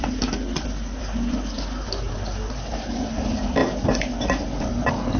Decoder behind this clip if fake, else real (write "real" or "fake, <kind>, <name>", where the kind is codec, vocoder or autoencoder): real